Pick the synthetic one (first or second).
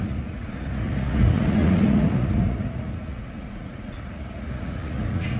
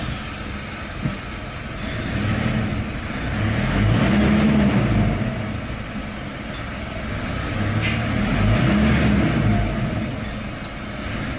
first